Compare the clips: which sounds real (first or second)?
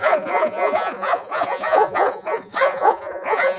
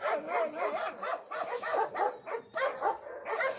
second